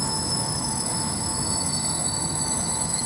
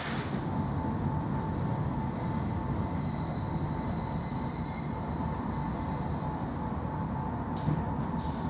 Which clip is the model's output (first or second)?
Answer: first